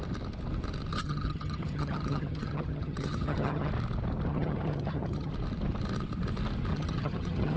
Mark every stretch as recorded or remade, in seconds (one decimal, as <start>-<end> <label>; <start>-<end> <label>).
0.0-0.9 recorded; 0.9-3.7 remade; 3.7-4.3 recorded; 4.3-5.3 remade; 5.3-6.7 recorded; 6.7-7.6 remade